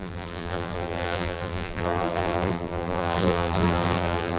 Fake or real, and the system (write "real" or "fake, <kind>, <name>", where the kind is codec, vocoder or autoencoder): fake, vocoder, BigVGAN v2